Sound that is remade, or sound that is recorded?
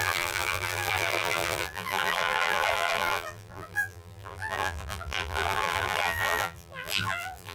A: remade